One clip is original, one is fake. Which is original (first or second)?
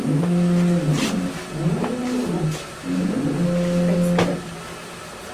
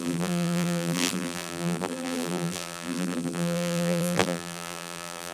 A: first